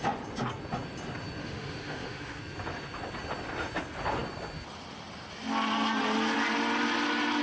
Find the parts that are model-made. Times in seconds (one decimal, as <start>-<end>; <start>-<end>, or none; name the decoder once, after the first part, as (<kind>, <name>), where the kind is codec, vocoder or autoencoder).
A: 1.4-2.4 (autoencoder, DAC-VAE)

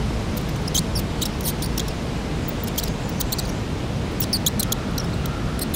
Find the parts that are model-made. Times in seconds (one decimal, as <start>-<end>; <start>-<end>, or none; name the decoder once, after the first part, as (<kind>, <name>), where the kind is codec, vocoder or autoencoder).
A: none

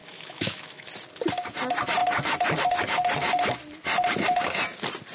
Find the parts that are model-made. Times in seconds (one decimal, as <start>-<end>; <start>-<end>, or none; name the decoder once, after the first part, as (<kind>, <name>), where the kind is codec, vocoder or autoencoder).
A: 0.0-0.9 (autoencoder, DAC-VAE)

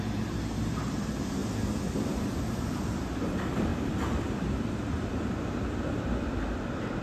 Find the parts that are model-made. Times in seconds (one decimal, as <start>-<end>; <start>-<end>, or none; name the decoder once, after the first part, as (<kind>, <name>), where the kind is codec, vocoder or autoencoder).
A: 0.0-1.4 (vocoder, BigVGAN v2); 3.2-3.7

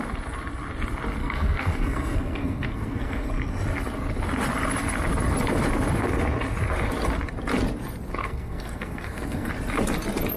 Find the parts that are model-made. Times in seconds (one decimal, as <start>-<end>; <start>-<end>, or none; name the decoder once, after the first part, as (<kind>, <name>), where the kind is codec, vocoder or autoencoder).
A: 1.2-3.3 (codec, SNAC); 8.2-9.5

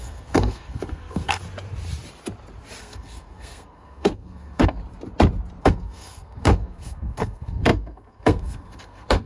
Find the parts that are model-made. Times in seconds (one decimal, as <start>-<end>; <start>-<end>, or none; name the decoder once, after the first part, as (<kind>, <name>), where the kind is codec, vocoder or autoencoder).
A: 0.0-1.4 (codec, SNAC); 2.8-4.8; 5.6-9.3

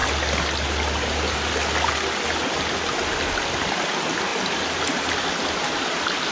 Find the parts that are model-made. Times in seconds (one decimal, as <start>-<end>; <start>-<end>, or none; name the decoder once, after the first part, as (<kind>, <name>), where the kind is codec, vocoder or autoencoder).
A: none

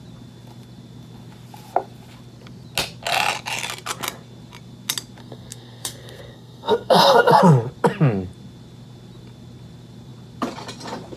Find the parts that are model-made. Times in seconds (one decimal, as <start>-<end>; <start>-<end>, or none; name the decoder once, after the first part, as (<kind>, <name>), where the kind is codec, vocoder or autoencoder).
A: 5.2-7.4 (codec, SNAC)